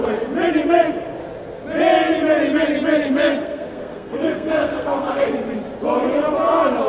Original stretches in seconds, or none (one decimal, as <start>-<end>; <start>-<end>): 0.0-3.4; 5.3-6.9